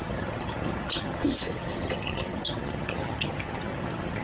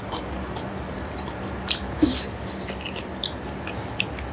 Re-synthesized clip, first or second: first